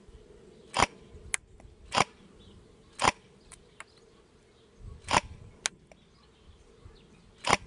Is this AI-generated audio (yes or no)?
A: no